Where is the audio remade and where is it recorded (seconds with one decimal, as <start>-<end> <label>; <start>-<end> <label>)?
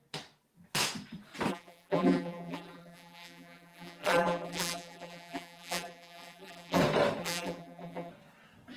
0.0-1.5 recorded; 1.5-6.8 remade; 6.8-7.2 recorded; 7.2-8.1 remade; 8.1-8.8 recorded